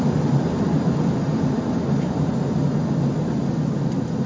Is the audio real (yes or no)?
yes